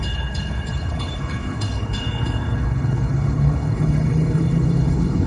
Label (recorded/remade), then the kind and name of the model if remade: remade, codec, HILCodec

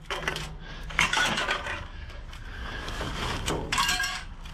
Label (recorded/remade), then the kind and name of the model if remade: remade, codec, DAC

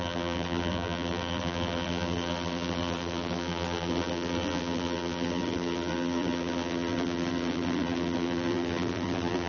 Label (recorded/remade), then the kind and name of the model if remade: remade, vocoder, BigVGAN v2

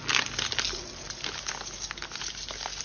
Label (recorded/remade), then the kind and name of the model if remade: recorded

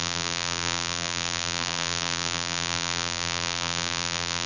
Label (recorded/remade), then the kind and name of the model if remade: remade, vocoder, BigVGAN v2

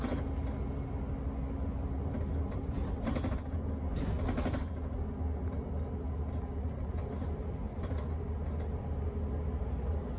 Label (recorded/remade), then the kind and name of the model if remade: recorded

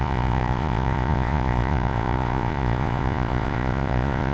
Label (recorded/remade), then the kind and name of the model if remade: remade, vocoder, Vocos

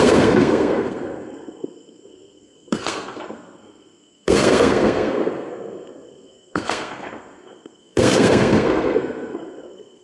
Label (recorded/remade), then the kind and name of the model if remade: remade, codec, SNAC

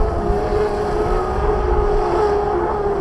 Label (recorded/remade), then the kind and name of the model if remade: recorded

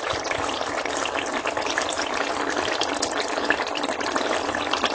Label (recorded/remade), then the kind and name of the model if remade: recorded